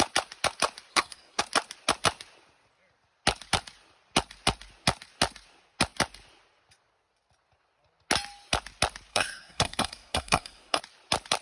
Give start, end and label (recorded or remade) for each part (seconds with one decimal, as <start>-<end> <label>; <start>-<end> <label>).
0.0-0.9 recorded; 0.9-1.4 remade; 1.4-9.1 recorded; 9.1-10.8 remade; 10.8-11.4 recorded